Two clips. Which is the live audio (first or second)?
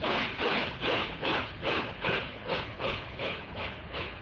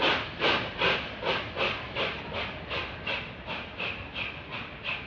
second